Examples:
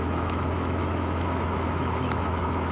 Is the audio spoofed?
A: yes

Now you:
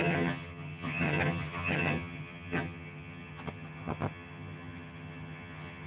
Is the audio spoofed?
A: yes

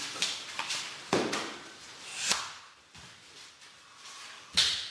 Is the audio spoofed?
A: no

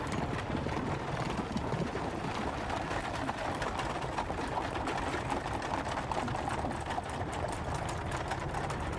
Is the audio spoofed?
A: no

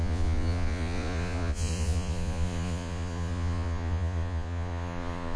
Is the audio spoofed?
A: yes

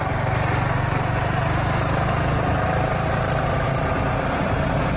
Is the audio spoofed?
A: no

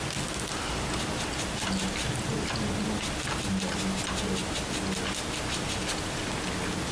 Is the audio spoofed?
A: no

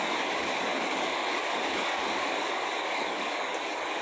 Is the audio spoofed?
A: yes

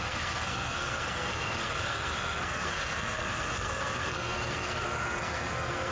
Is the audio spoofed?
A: yes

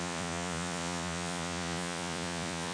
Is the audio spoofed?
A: yes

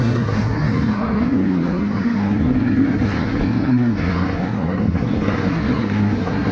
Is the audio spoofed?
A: yes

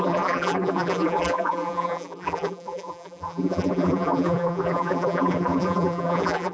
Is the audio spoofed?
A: yes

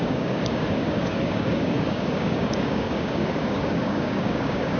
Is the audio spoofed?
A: yes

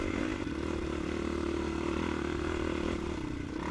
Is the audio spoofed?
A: no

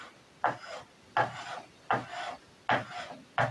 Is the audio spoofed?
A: no